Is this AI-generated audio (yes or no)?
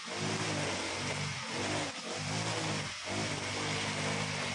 no